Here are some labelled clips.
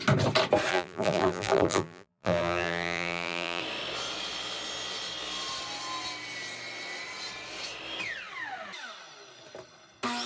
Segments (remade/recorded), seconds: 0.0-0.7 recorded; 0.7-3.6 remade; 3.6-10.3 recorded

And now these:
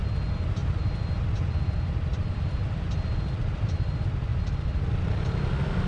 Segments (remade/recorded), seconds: 0.0-0.6 recorded; 0.6-3.9 remade; 3.9-4.3 recorded; 4.3-5.4 remade; 5.4-5.9 recorded

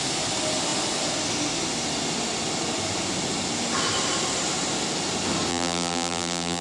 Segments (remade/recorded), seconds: 0.0-5.5 recorded; 5.5-6.6 remade

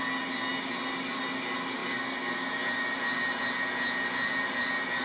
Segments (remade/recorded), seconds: 0.0-5.0 recorded